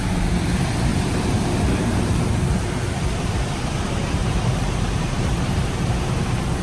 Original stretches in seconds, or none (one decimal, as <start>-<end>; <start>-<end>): 0.0-0.9; 2.2-4.2; 5.9-6.6